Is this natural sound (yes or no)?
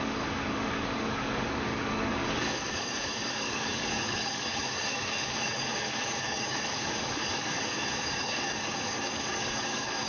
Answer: no